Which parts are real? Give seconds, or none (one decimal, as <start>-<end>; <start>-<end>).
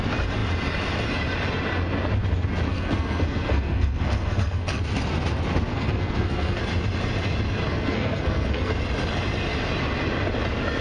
0.0-2.7; 4.8-5.7; 6.6-7.7; 8.7-10.8